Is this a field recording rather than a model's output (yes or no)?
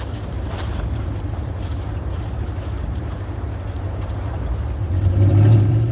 no